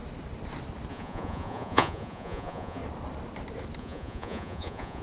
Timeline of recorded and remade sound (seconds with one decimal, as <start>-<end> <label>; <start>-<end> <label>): 0.0-0.9 recorded; 0.9-2.8 remade; 2.8-3.8 recorded; 3.8-5.0 remade